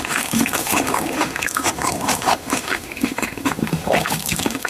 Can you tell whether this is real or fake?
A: fake